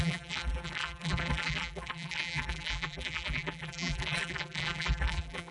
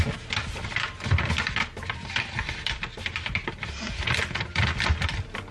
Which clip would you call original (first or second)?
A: second